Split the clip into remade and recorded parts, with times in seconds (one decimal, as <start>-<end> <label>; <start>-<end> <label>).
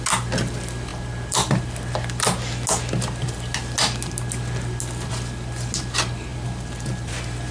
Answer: 0.0-7.5 recorded